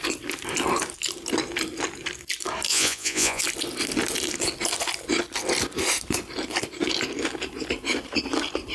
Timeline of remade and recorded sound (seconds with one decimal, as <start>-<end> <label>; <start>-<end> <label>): 0.0-2.7 recorded; 2.7-3.4 remade; 3.4-8.7 recorded